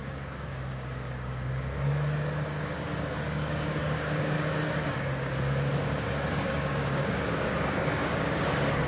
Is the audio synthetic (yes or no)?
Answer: yes